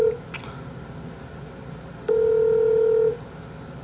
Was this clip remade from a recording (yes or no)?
no